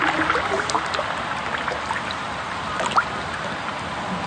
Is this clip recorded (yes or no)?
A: yes